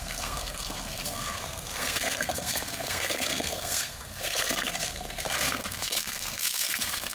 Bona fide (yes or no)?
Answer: no